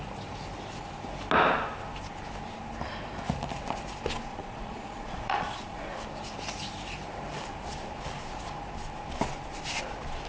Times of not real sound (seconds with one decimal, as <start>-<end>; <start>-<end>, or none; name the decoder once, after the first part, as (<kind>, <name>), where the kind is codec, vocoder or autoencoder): 4.3-5.9 (vocoder, Vocos)